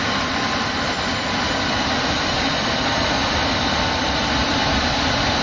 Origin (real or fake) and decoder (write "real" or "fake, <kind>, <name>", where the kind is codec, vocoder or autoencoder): real